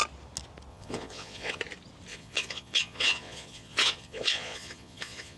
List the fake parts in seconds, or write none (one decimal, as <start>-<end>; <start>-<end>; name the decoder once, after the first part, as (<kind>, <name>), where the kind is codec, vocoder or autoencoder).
0.7-1.6 (vocoder, Vocos); 2.1-5.4